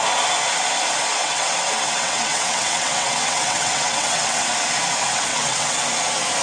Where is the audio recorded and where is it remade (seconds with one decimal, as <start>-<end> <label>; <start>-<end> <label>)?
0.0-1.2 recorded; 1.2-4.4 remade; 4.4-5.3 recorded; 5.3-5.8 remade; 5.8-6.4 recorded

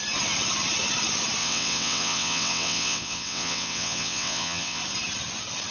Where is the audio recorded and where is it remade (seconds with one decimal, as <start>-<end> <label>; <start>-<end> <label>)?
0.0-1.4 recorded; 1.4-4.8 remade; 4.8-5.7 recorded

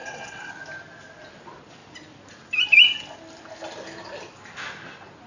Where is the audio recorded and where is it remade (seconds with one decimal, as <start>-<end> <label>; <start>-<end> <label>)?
0.0-0.5 remade; 0.5-5.3 recorded

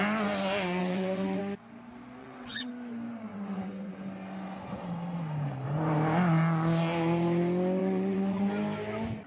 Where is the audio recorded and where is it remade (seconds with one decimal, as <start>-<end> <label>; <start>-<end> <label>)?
0.0-0.8 recorded; 0.8-1.4 remade; 1.4-2.2 recorded; 2.2-2.7 remade; 2.7-3.3 recorded; 3.3-3.9 remade; 3.9-7.8 recorded; 7.8-8.5 remade; 8.5-9.3 recorded